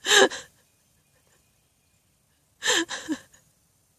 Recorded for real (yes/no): yes